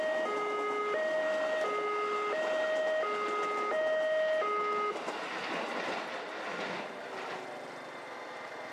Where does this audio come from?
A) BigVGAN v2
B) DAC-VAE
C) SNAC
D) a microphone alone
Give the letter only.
D